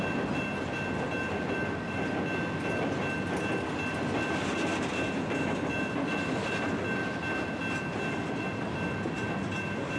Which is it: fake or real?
real